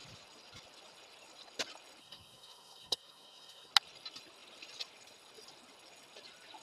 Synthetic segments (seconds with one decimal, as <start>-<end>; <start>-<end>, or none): 2.0-3.7